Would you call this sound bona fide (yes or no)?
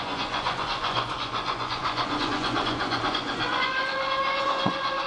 no